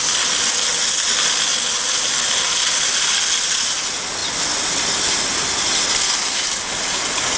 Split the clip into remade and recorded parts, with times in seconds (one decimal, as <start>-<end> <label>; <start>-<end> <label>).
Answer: 0.0-6.2 recorded; 6.2-6.8 remade; 6.8-7.4 recorded